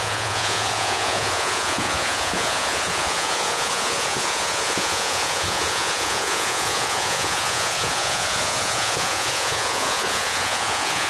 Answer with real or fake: fake